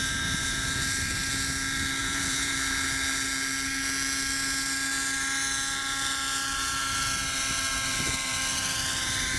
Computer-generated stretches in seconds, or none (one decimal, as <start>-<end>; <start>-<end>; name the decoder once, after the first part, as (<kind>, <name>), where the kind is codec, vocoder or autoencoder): 2.0-2.5 (vocoder, Vocos)